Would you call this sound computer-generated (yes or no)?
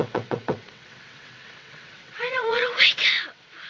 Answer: yes